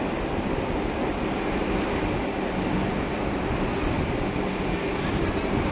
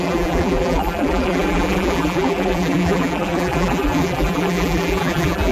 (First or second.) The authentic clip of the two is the first